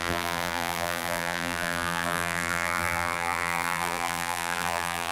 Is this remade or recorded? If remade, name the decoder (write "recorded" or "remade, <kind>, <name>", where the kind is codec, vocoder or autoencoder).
remade, vocoder, BigVGAN v2